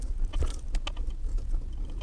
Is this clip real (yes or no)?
yes